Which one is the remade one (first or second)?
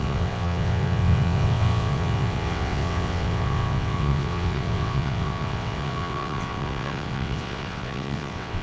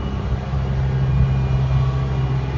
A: first